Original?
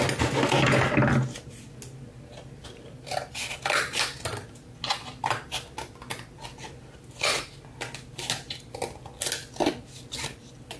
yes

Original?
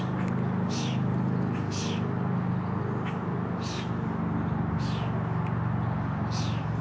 yes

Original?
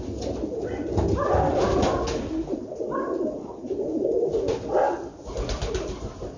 yes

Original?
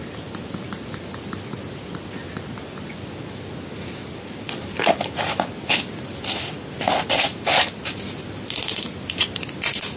yes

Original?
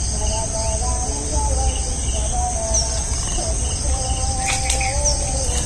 yes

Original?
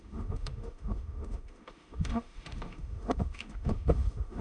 no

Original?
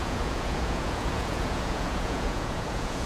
no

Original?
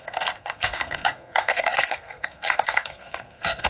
no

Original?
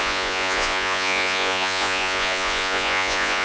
no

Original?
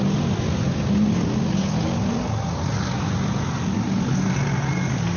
yes